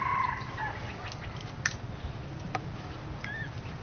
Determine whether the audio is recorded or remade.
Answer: recorded